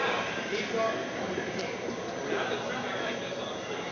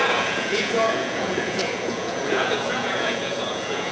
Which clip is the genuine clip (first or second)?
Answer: first